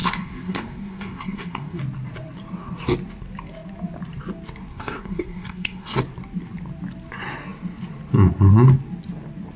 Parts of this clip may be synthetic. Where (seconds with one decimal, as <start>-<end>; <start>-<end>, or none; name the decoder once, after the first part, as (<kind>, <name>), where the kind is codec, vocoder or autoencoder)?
0.0-1.8 (codec, SNAC); 4.7-6.0

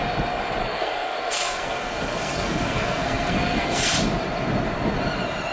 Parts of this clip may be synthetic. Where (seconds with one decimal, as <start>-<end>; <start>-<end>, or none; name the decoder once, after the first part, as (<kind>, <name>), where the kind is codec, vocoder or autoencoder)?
0.6-3.9 (codec, SNAC)

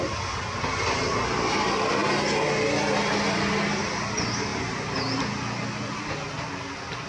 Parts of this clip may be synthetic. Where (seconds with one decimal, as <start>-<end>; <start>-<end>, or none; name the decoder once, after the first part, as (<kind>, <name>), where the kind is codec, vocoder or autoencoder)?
none

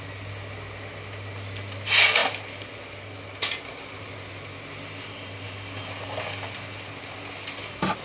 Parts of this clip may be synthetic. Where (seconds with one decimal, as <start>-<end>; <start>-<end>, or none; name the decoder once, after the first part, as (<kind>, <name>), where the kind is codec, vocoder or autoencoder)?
none

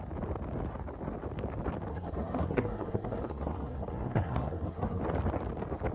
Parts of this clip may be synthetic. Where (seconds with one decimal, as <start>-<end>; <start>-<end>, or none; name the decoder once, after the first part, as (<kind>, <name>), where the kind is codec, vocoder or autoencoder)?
1.9-5.0 (codec, SNAC)

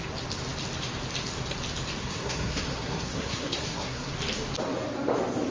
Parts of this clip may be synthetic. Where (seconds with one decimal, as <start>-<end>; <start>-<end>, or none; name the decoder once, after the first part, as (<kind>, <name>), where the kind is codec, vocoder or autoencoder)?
2.0-4.1 (codec, SNAC)

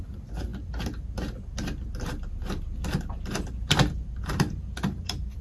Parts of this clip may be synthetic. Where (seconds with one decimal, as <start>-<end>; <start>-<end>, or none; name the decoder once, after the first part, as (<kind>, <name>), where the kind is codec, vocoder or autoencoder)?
none